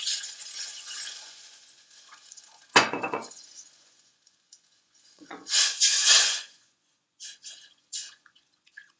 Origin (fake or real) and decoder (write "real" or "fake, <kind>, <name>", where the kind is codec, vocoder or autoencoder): fake, vocoder, Vocos